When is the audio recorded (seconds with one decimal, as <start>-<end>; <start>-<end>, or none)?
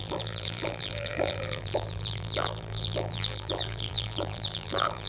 none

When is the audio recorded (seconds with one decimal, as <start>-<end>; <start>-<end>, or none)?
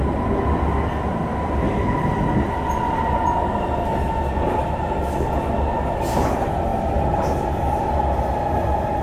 0.0-1.1; 2.1-9.0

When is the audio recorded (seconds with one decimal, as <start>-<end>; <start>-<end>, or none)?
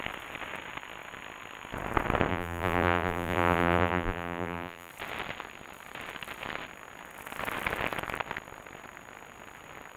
0.0-2.3; 4.9-10.0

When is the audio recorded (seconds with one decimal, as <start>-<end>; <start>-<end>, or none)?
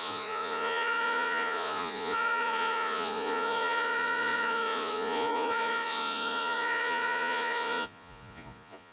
none